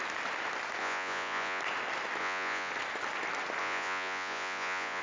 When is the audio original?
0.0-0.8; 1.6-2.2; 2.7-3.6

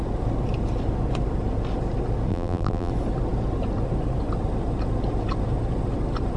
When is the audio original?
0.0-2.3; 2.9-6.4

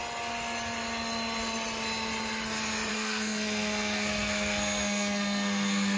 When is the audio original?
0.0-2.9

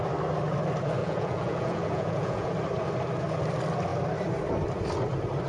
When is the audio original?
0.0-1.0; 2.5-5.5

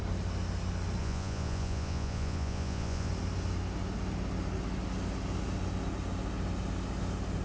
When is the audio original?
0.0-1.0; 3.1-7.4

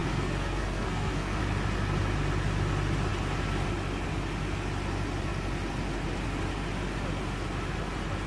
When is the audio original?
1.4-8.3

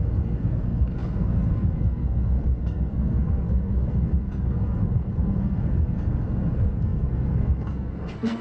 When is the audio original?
none

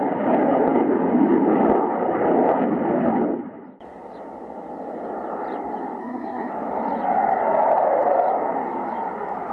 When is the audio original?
0.0-6.0; 6.5-9.5